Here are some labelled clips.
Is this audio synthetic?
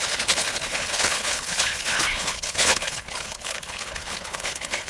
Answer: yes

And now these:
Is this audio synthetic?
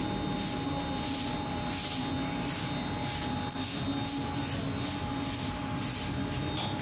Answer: no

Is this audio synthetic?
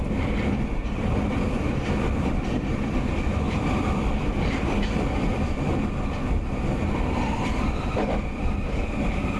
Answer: yes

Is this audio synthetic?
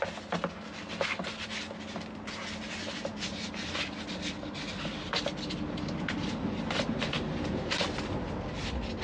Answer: no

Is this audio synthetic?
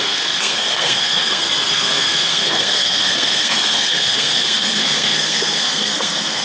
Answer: yes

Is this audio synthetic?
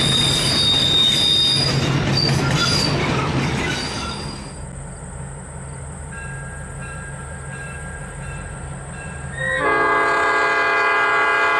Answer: no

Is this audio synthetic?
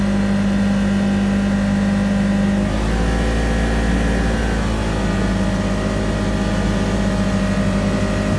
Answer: no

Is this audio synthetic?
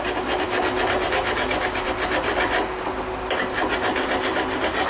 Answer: no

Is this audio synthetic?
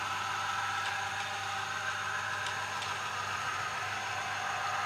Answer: no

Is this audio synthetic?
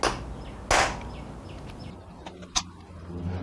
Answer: no